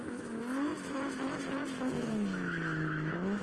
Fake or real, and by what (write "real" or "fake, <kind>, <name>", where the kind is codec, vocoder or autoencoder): fake, autoencoder, DAC-VAE